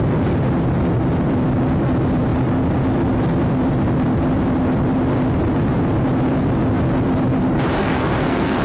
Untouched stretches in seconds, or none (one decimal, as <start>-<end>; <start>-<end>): 0.0-7.8